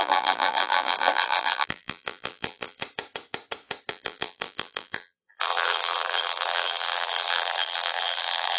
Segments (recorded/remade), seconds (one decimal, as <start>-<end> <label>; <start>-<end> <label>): 0.0-2.8 remade; 2.8-3.9 recorded; 3.9-8.6 remade

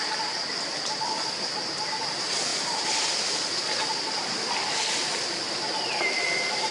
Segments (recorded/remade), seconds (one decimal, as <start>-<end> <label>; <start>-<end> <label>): 0.0-6.7 recorded

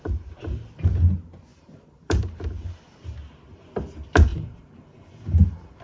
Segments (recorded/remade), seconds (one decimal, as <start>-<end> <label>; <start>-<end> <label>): 0.0-1.5 recorded; 1.5-2.4 remade; 2.4-4.3 recorded; 4.3-5.8 remade

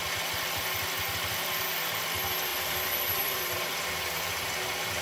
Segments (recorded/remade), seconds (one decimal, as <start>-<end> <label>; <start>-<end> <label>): 0.0-2.5 recorded; 2.5-4.5 remade; 4.5-5.0 recorded

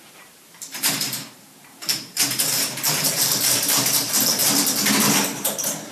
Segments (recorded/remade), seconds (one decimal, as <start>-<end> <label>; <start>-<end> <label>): 0.0-4.4 remade; 4.4-5.0 recorded; 5.0-5.9 remade

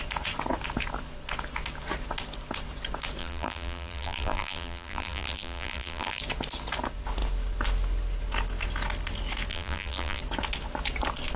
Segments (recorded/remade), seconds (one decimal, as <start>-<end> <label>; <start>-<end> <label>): 0.0-3.2 recorded; 3.2-6.2 remade; 6.2-9.5 recorded; 9.5-10.2 remade; 10.2-11.4 recorded

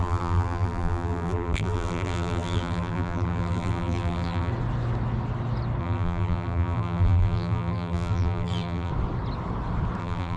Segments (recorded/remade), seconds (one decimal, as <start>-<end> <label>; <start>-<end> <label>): 0.0-4.5 remade; 4.5-5.8 recorded; 5.8-8.9 remade; 8.9-10.0 recorded; 10.0-10.4 remade